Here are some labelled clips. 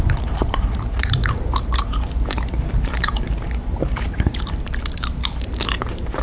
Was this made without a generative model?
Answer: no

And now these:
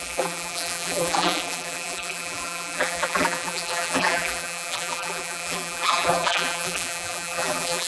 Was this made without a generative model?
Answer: no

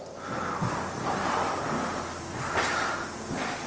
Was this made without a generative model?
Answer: yes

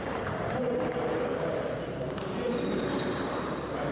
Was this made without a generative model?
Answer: no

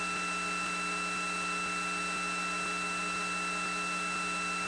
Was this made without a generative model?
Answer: yes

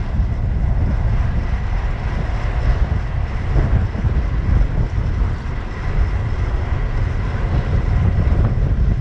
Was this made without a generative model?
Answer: yes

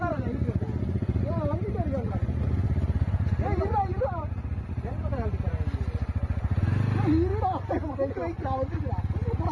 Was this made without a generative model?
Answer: yes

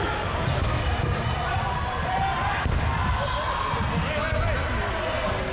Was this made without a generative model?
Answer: yes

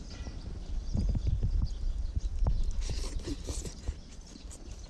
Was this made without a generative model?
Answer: no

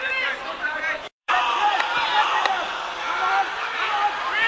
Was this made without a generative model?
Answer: no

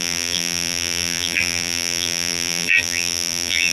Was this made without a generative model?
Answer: no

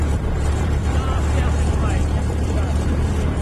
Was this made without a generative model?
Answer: no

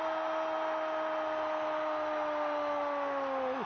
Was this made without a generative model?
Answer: yes